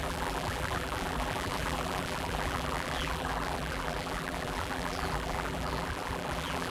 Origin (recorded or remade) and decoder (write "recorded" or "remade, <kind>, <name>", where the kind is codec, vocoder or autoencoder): remade, vocoder, BigVGAN v2